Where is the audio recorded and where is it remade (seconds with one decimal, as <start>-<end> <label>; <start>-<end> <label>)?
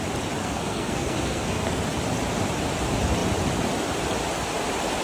0.0-0.4 recorded; 0.4-1.8 remade; 1.8-5.0 recorded